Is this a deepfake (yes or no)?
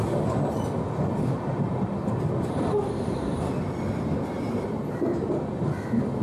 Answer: no